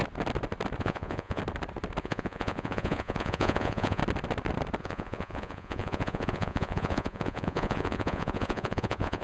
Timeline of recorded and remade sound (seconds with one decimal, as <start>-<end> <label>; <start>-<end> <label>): 0.0-0.8 recorded; 0.8-1.4 remade; 1.4-2.0 recorded; 2.0-4.0 remade; 4.0-4.8 recorded; 4.8-9.2 remade